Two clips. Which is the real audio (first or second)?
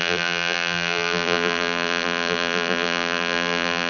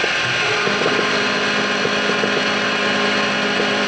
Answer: second